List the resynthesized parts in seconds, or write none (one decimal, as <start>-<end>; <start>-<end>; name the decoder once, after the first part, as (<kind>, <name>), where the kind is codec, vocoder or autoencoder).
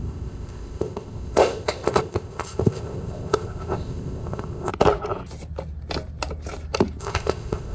0.0-4.7 (codec, ZipCodec); 7.0-7.7